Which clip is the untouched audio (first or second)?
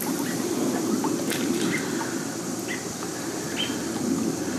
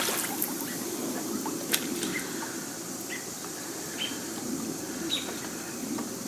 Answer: first